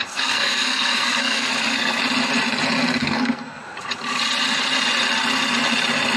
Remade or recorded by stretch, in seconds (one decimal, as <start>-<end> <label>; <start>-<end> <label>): 0.0-2.0 remade; 2.0-3.0 recorded; 3.0-3.6 remade; 3.6-6.2 recorded